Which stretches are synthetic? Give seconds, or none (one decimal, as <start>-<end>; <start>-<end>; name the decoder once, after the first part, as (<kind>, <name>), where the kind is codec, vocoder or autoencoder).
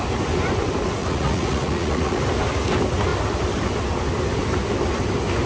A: 1.0-2.2 (vocoder, Vocos)